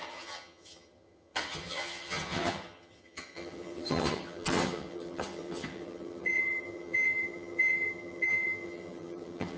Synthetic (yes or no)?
yes